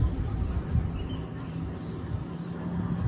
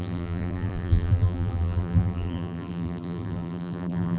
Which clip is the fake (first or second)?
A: second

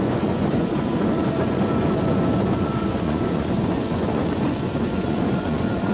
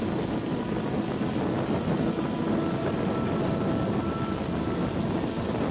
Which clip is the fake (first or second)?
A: first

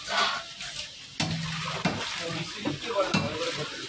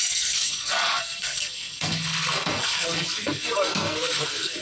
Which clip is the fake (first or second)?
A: second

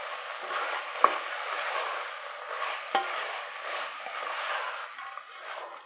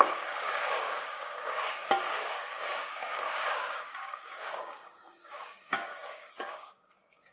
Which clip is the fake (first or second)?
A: second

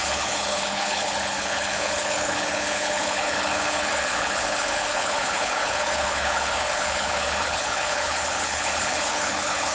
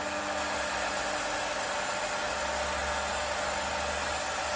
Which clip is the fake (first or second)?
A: first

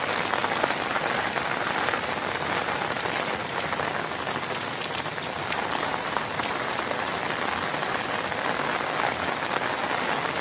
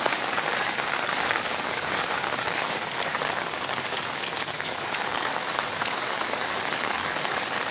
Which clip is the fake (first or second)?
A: second